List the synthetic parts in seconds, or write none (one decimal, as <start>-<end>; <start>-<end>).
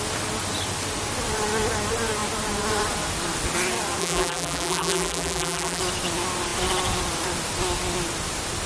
4.0-5.8